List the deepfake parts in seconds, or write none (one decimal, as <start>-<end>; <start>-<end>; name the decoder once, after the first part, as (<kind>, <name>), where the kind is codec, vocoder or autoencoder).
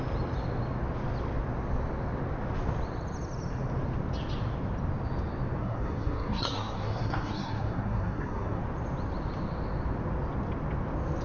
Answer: 5.6-8.6 (codec, SNAC)